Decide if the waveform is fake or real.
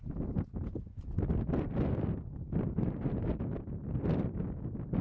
real